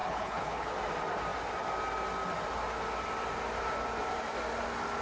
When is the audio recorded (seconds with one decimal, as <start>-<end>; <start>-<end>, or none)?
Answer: 0.7-5.0